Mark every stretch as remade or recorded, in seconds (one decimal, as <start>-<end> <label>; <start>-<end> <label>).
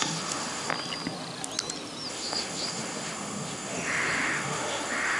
0.0-0.7 remade; 0.7-2.1 recorded; 2.1-5.2 remade